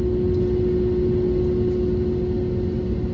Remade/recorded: recorded